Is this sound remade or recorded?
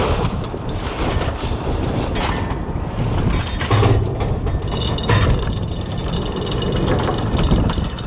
recorded